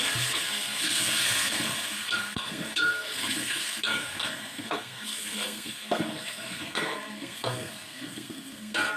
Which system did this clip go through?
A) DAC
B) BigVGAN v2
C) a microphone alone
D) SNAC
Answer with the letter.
D